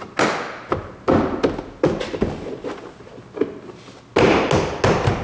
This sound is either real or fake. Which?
real